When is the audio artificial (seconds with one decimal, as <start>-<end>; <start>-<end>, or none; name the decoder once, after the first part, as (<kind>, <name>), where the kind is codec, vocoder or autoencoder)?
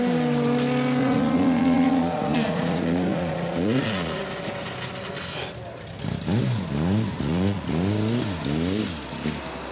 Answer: 1.0-4.2 (vocoder, Vocos); 7.1-7.7